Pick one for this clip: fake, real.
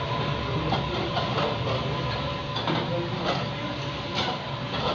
real